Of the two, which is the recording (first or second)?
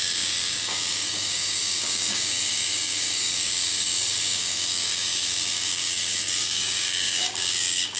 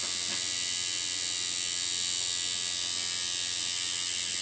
second